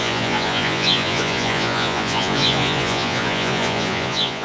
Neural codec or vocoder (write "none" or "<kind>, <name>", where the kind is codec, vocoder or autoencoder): vocoder, Vocos